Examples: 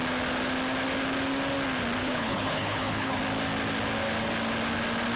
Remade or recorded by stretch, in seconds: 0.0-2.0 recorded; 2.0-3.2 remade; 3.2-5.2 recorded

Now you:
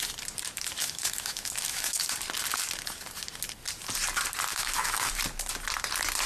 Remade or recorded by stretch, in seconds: 0.0-0.8 recorded; 0.8-2.0 remade; 2.0-4.5 recorded; 4.5-5.1 remade; 5.1-6.3 recorded

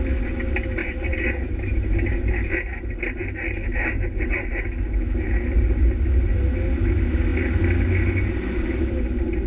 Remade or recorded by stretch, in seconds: 0.0-9.5 recorded

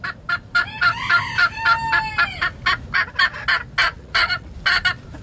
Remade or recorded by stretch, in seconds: 0.0-3.8 recorded; 3.8-4.5 remade; 4.5-5.2 recorded